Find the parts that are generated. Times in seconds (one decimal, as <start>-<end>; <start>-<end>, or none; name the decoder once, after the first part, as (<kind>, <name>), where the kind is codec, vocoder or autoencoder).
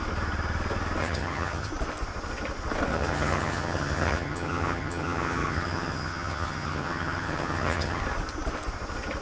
1.0-1.7 (vocoder, HiFi-GAN); 2.9-8.0